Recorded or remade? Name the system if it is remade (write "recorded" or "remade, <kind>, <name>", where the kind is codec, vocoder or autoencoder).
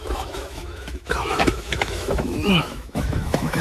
remade, autoencoder, DAC-VAE